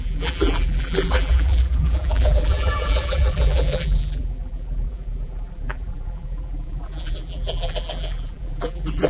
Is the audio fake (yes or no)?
yes